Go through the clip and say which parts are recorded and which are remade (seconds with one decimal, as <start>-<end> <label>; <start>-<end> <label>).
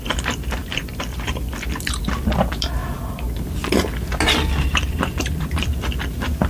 0.0-2.8 remade; 2.8-5.2 recorded; 5.2-6.5 remade